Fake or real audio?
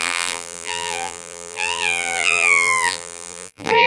fake